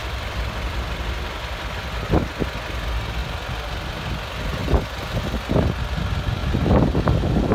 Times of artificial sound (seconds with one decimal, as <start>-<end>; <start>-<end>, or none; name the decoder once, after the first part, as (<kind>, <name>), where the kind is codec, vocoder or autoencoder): 0.0-0.7 (vocoder, BigVGAN v2); 4.6-5.2; 6.4-7.5